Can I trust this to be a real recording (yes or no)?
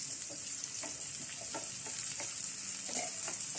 yes